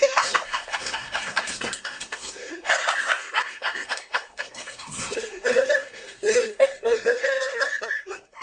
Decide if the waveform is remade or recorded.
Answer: remade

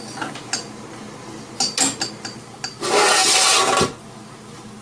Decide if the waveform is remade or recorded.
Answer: recorded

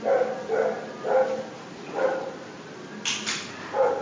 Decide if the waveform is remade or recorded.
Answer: recorded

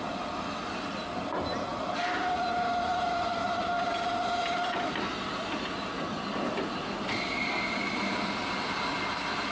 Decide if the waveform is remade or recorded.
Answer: recorded